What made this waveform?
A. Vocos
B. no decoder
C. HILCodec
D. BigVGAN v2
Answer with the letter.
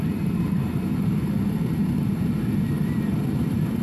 B